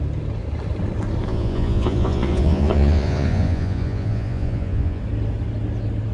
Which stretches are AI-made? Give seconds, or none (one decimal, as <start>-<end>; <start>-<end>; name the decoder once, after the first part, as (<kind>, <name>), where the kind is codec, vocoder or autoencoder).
1.3-5.0 (vocoder, Vocos)